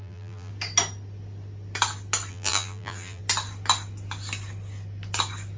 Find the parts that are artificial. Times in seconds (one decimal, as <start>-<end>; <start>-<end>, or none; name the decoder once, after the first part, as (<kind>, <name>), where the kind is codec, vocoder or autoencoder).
0.0-0.5 (vocoder, BigVGAN v2); 2.3-3.2